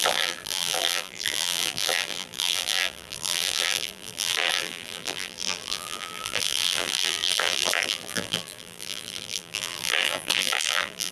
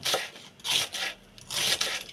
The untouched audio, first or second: second